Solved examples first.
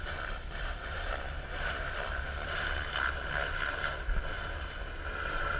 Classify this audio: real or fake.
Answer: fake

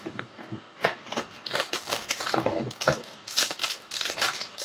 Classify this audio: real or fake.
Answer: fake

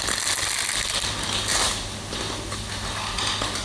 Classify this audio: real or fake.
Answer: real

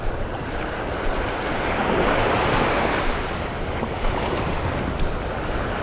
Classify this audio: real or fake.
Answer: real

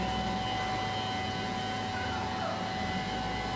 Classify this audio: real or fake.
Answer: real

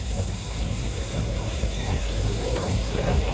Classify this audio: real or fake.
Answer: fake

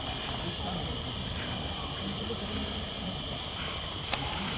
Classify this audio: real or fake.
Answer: real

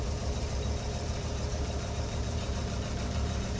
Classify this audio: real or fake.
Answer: fake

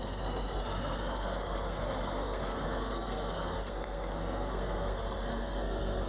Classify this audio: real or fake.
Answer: fake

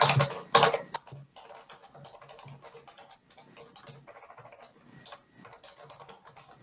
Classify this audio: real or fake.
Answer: real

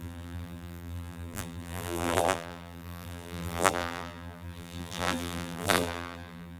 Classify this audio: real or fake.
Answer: fake